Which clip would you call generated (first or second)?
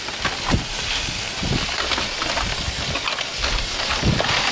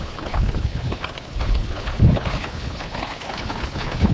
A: second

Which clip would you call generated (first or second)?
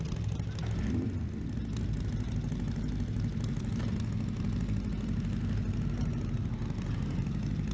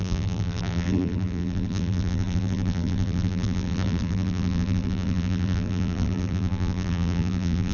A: second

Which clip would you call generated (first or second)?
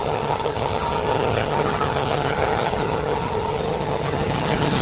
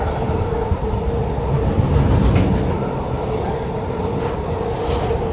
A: first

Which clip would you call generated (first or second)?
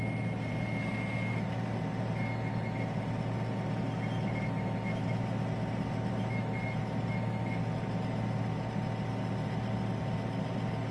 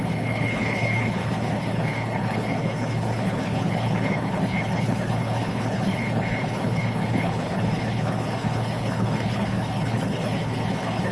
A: second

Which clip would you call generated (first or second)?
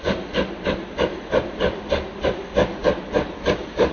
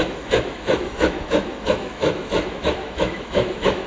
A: second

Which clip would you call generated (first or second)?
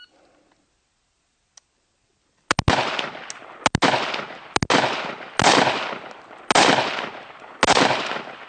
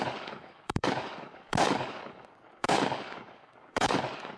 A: second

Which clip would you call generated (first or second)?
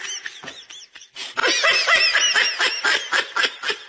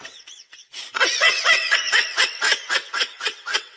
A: second